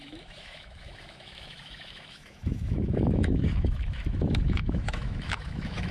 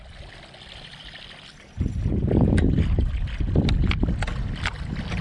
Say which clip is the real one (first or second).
second